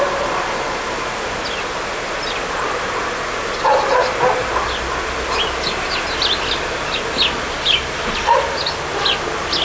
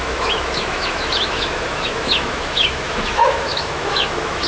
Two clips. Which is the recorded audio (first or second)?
first